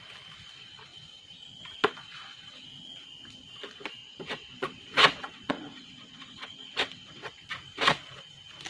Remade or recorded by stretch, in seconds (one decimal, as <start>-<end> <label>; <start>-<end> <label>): 0.0-4.0 recorded; 4.0-7.5 remade; 7.5-8.7 recorded